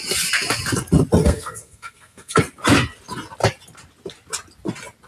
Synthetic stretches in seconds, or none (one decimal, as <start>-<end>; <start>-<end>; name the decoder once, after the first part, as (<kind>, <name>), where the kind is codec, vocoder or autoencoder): 1.2-2.4 (codec, SNAC)

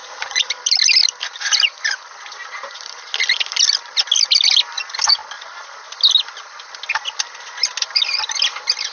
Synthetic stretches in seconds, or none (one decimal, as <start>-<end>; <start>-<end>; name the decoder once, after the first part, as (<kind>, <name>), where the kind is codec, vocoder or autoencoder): 0.0-0.5 (vocoder, Vocos)

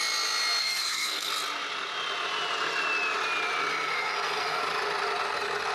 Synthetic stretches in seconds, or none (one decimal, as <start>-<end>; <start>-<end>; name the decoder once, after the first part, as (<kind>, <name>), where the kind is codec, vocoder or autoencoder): 0.6-1.3 (codec, SNAC); 3.7-4.6

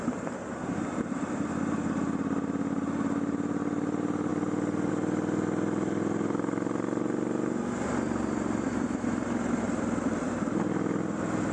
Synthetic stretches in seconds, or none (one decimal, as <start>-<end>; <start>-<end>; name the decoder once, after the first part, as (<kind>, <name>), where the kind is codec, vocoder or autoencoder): none

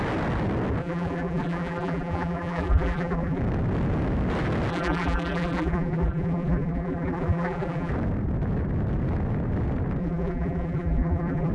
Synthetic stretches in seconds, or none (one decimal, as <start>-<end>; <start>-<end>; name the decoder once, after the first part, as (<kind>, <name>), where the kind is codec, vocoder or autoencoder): 0.8-3.4 (vocoder, BigVGAN v2); 4.7-7.9; 10.0-11.5

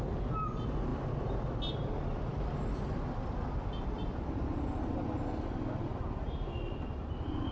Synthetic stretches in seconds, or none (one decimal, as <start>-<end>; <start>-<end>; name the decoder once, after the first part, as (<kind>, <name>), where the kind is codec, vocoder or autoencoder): none